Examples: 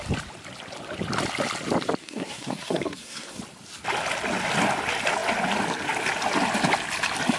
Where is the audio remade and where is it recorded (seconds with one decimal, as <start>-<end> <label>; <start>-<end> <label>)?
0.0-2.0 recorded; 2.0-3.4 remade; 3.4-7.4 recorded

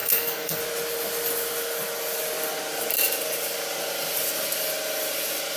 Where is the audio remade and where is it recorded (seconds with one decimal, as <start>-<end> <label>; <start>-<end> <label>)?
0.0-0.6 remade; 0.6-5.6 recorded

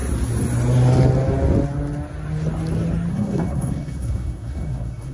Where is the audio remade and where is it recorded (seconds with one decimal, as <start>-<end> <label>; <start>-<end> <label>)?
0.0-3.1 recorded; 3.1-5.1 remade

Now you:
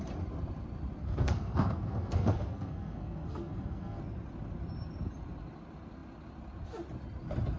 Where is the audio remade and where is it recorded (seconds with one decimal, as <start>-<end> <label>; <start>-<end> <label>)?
0.0-1.0 recorded; 1.0-4.0 remade; 4.0-7.6 recorded